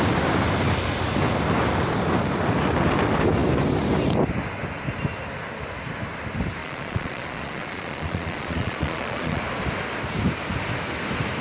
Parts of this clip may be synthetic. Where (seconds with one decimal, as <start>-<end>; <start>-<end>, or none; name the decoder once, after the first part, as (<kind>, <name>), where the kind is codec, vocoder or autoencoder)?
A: 6.6-9.4 (vocoder, Vocos)